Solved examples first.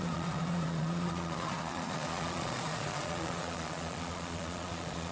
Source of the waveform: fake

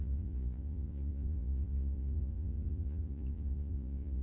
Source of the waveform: fake